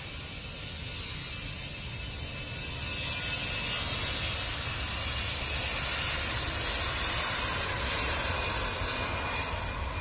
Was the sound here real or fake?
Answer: real